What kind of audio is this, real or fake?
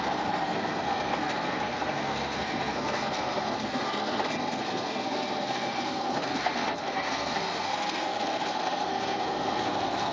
fake